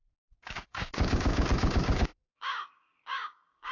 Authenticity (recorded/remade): remade